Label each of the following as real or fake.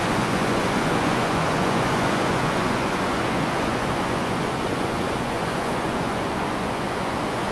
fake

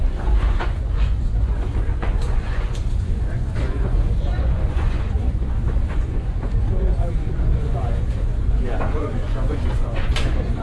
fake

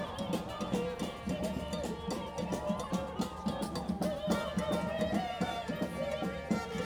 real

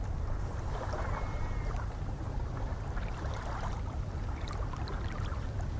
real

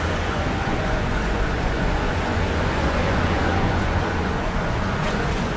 fake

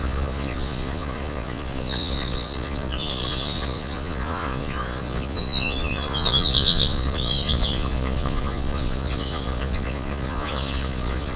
fake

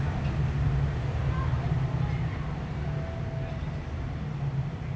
real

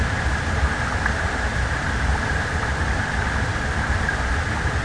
real